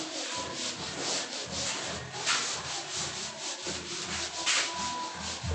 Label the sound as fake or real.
real